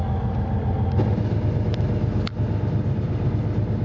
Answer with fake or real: real